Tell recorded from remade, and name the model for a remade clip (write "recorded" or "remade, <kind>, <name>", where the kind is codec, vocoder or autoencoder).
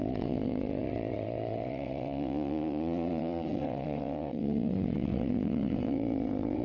remade, vocoder, WaveNeXt